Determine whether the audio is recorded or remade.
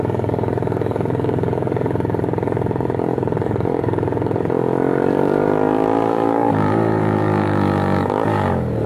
remade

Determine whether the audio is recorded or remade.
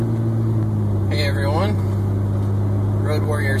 recorded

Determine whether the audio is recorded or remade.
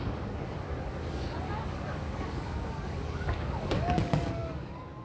remade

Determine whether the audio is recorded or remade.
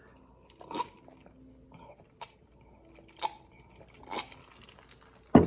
recorded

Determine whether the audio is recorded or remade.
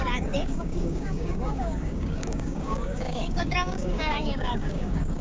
remade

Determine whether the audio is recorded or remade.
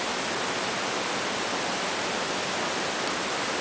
recorded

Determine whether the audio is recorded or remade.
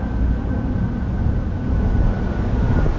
recorded